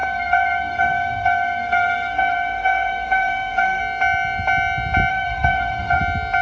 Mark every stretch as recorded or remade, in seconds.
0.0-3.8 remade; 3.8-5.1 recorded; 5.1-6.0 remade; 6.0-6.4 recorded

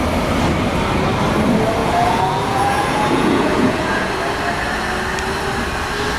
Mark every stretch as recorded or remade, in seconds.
0.0-1.8 recorded; 1.8-4.1 remade; 4.1-6.2 recorded